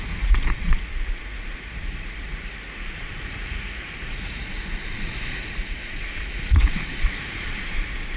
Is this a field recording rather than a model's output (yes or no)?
no